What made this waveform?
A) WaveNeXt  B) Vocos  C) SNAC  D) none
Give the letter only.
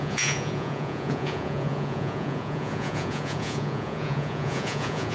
B